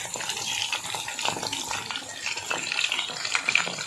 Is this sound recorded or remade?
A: recorded